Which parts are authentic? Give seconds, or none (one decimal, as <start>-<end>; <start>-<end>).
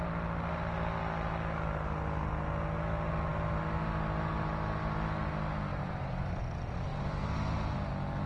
0.0-5.7; 6.4-6.9; 7.9-8.3